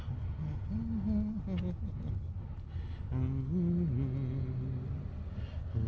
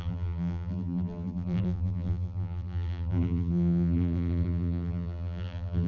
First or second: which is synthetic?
second